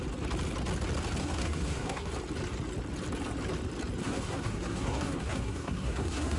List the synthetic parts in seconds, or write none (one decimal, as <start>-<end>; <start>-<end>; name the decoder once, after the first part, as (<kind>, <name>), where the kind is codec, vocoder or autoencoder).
1.2-2.1 (codec, SNAC); 4.0-6.4